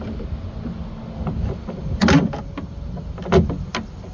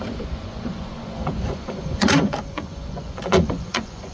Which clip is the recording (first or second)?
first